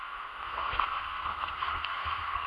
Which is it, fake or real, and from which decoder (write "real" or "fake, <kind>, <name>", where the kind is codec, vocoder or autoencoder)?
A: fake, codec, SNAC